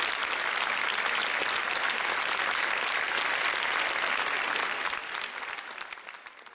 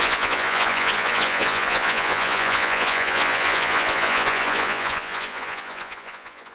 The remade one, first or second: second